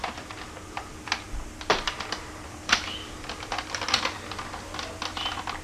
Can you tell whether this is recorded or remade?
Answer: recorded